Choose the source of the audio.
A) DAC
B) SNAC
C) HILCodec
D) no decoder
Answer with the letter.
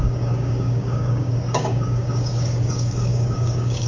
A